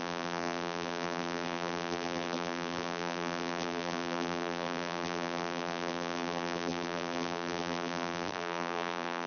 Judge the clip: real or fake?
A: fake